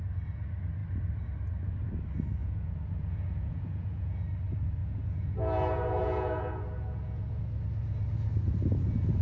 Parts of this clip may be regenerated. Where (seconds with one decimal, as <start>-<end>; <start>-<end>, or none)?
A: 2.4-4.2; 4.8-7.4